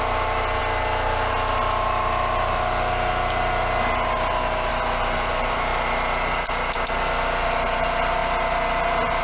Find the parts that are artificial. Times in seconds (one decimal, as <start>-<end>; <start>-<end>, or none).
0.0-0.6; 4.7-5.7; 7.4-8.2